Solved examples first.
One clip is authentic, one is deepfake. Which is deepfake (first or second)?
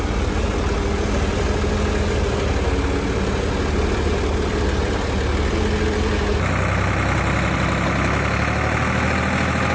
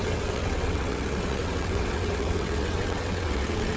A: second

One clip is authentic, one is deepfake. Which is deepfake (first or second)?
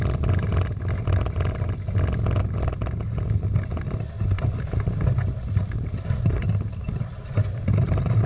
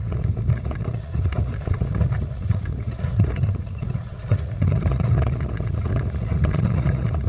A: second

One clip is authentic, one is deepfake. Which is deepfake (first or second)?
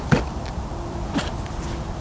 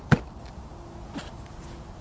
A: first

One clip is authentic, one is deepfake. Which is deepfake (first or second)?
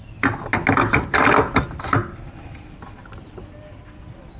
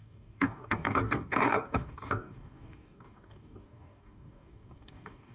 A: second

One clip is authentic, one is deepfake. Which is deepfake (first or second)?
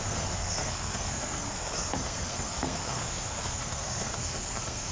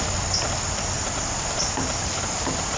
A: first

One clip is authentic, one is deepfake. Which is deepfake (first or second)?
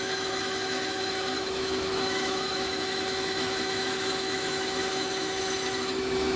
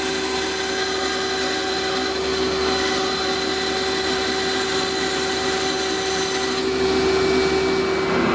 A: first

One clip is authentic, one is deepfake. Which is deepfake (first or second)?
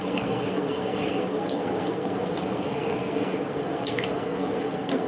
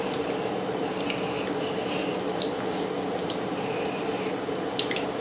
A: first